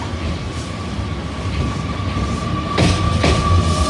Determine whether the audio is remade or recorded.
recorded